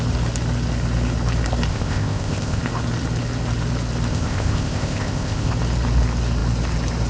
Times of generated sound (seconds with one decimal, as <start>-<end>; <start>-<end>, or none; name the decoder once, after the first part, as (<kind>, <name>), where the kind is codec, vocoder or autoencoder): 1.7-2.6 (codec, ZipCodec); 4.1-5.5